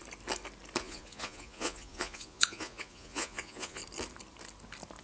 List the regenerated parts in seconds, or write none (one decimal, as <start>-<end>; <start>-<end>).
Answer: 0.8-3.8